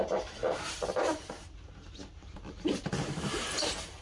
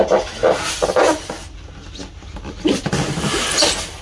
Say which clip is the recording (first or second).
second